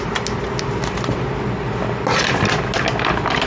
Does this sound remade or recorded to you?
recorded